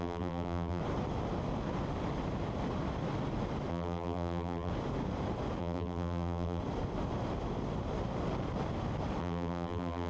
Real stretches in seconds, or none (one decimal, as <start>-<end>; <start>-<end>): 0.8-3.7; 4.7-5.6; 6.6-9.2